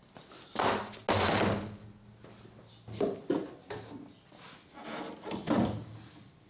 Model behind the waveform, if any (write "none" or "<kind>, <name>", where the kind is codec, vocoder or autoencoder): none